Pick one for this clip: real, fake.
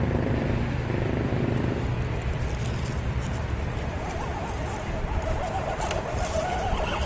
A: fake